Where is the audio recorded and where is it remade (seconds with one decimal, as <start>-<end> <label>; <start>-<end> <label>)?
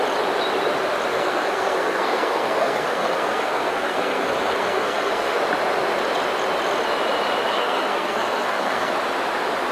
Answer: 0.0-1.1 recorded; 1.1-5.4 remade; 5.4-7.5 recorded; 7.5-8.9 remade; 8.9-9.7 recorded